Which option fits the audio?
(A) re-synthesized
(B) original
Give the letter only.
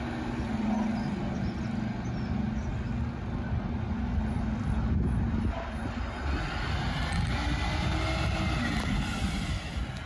B